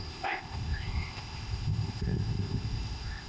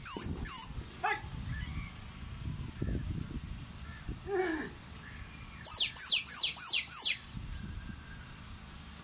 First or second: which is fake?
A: first